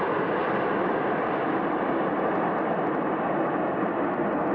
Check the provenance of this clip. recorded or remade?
recorded